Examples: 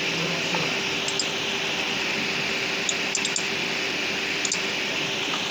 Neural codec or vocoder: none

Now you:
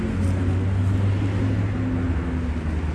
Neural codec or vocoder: none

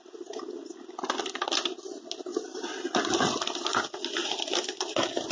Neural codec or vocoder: none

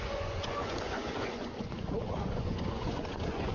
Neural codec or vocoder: vocoder, Vocos